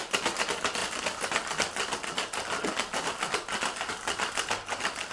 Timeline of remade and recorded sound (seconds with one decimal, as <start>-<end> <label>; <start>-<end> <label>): 0.0-5.1 recorded